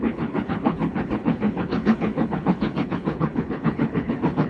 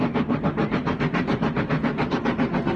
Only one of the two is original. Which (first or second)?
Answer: second